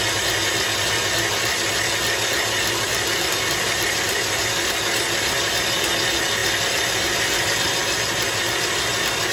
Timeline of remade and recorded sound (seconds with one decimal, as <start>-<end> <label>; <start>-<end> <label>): 0.0-9.3 recorded